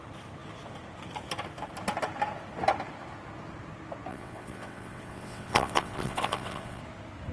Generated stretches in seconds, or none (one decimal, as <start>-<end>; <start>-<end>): 4.1-6.8